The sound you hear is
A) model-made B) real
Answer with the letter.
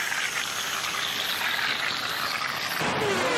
B